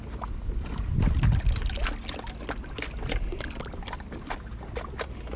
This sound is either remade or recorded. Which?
recorded